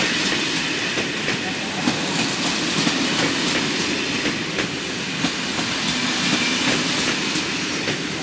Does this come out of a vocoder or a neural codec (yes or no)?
no